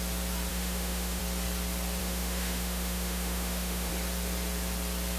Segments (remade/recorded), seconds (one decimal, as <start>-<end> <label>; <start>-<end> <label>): 0.0-0.5 recorded; 0.5-1.2 remade; 1.2-2.0 recorded; 2.0-3.9 remade; 3.9-5.2 recorded